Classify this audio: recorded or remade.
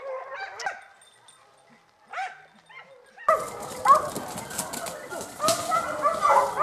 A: recorded